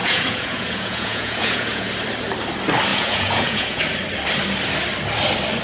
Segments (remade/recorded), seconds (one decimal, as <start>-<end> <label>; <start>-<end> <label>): 0.0-1.9 remade; 1.9-2.9 recorded; 2.9-3.8 remade; 3.8-5.6 recorded